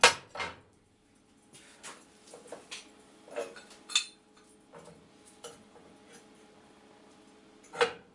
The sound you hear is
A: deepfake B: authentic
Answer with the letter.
B